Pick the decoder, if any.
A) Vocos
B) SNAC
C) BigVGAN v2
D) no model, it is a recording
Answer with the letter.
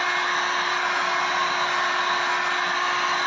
D